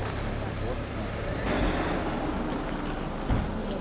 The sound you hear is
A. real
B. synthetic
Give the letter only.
A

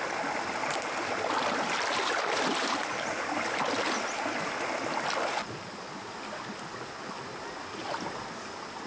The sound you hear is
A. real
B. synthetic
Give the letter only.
A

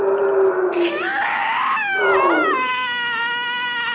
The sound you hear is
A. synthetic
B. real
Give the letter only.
B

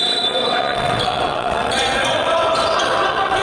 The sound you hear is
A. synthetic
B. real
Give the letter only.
A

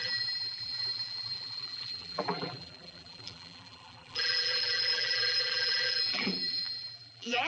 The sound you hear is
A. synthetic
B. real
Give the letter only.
A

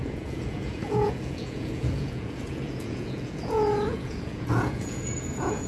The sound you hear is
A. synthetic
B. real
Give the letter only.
A